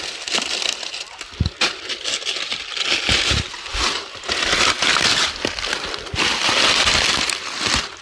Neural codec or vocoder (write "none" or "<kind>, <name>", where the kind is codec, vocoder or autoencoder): none